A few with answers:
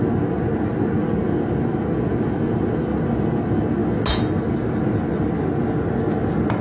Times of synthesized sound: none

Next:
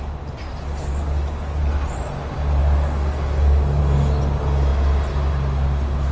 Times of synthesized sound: 0.9-1.6 (codec, DAC); 2.6-3.8

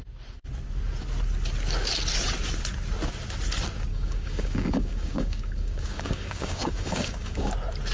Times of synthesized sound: 3.9-7.5 (codec, DAC)

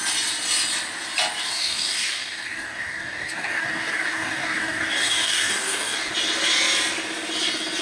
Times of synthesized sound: 1.5-6.1 (codec, DAC)

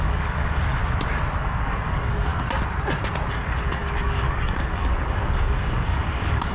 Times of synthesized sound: 0.0-0.8 (codec, DAC); 1.4-2.3; 3.3-6.5